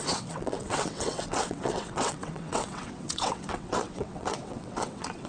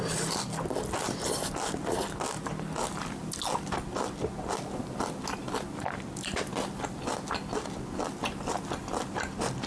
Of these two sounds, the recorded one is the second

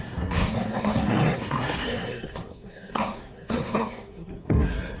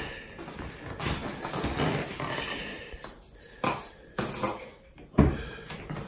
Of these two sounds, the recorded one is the second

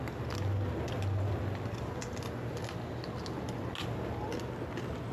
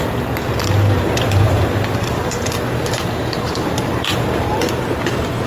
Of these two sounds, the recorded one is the first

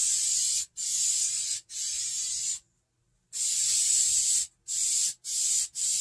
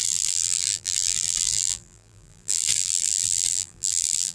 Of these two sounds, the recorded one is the first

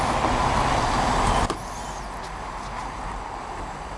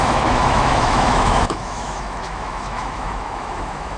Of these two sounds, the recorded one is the first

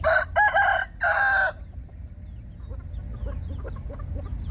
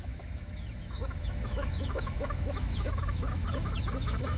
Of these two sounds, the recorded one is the first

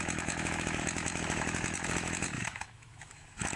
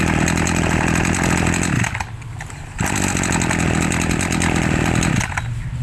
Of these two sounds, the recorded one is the second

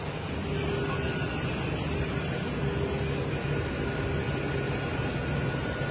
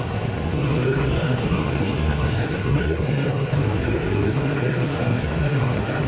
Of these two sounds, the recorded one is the first